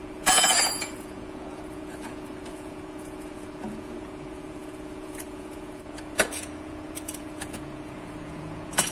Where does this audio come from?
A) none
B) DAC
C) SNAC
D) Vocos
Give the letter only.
D